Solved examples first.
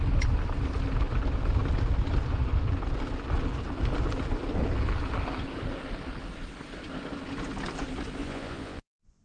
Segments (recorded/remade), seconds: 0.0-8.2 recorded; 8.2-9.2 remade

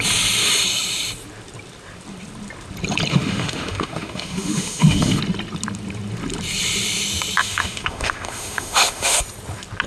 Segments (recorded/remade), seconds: 0.0-3.1 recorded; 3.1-5.2 remade; 5.2-7.4 recorded; 7.4-9.2 remade; 9.2-9.9 recorded